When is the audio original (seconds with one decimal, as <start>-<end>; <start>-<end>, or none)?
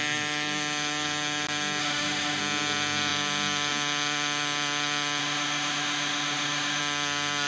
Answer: 0.0-1.8; 2.4-5.2; 6.8-7.5